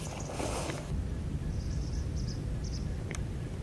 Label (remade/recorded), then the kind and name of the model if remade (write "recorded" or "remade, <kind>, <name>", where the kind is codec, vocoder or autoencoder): recorded